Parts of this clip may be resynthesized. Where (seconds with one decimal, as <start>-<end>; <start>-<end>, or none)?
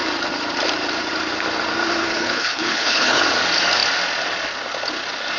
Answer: 2.0-3.2